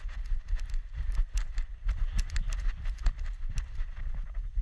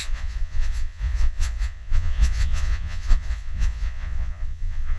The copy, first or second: second